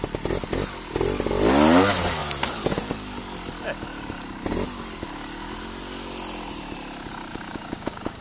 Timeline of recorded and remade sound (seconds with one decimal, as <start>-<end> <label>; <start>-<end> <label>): 0.0-7.3 recorded; 7.3-8.2 remade